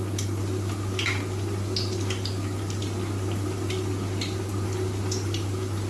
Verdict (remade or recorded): recorded